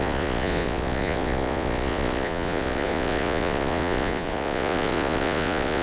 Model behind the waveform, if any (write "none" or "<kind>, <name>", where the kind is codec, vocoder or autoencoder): vocoder, Vocos